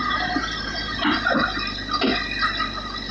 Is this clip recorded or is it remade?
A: recorded